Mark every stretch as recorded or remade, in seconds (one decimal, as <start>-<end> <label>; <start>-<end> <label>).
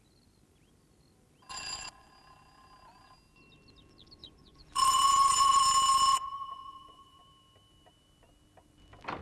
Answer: 0.0-1.5 recorded; 1.5-2.1 remade; 2.1-4.2 recorded; 4.2-5.6 remade; 5.6-6.1 recorded; 6.1-7.2 remade; 7.2-9.2 recorded